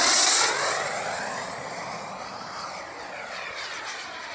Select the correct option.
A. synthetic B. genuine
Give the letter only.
B